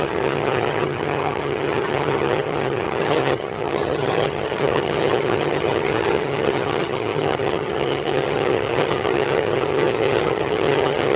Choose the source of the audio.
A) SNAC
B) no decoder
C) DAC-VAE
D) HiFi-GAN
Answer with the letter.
D